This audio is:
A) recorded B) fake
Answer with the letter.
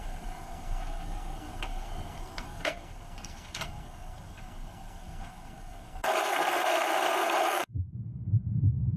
B